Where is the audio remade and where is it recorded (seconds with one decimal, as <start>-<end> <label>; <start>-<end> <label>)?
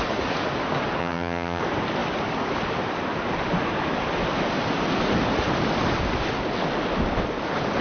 0.0-1.0 recorded; 1.0-1.6 remade; 1.6-7.8 recorded